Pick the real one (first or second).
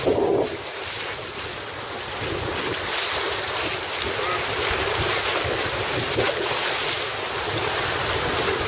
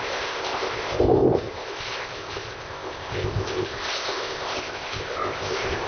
first